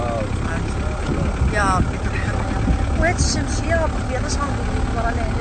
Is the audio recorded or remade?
recorded